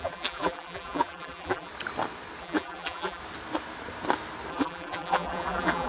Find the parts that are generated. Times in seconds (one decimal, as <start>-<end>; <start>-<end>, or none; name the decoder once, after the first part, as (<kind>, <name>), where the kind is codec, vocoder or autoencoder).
0.0-1.7 (vocoder, BigVGAN v2); 2.4-3.2; 4.5-5.9